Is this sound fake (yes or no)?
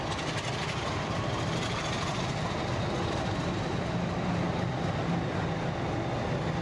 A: no